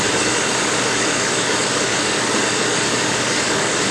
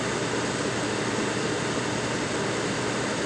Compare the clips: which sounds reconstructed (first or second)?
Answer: first